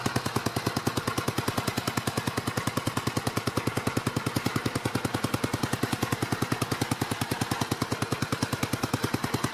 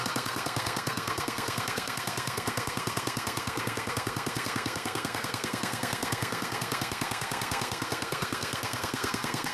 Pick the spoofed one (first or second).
second